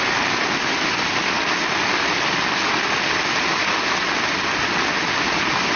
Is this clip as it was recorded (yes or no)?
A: yes